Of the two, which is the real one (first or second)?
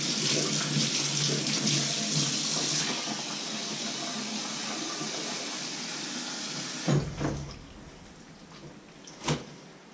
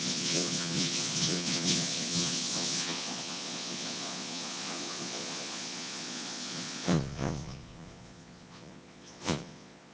first